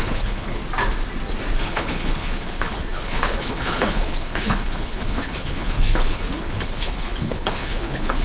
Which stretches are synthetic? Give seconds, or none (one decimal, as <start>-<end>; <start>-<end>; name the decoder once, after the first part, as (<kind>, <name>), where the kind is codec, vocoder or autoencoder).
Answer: 0.0-0.6 (codec, HILCodec); 1.6-8.2